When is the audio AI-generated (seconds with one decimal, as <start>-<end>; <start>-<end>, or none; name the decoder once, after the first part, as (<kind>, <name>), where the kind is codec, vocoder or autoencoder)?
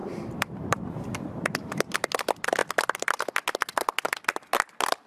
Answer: 0.0-0.9 (vocoder, BigVGAN v2)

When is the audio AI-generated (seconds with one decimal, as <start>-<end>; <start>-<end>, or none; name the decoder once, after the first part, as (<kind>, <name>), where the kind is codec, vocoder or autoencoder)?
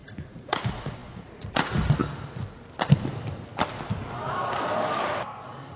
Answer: 0.0-2.0 (vocoder, Vocos)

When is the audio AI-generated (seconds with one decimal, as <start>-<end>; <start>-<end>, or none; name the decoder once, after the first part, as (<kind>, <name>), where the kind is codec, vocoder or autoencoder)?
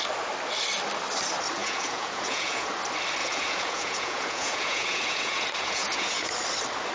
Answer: 1.6-2.7 (vocoder, Vocos); 3.2-6.3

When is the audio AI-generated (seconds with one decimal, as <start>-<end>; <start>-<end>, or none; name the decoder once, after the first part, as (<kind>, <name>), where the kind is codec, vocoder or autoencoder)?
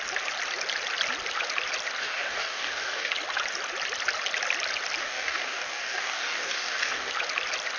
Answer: 2.0-3.1 (codec, DAC); 5.0-7.1